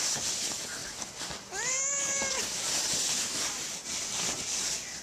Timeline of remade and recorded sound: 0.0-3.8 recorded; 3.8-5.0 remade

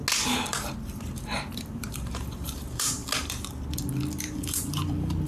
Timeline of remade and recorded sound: 0.0-1.0 recorded; 1.0-3.0 remade; 3.0-4.2 recorded; 4.2-5.3 remade

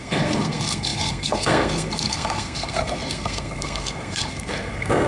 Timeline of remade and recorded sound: 0.0-5.1 remade

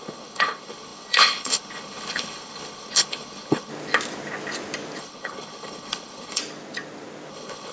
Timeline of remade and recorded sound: 0.0-3.7 remade; 3.7-5.0 recorded; 5.0-6.4 remade; 6.4-7.3 recorded; 7.3-7.7 remade

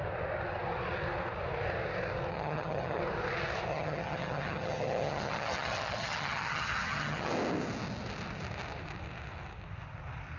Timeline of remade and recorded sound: 0.0-2.3 recorded; 2.3-3.0 remade; 3.0-3.7 recorded; 3.7-7.3 remade; 7.3-10.4 recorded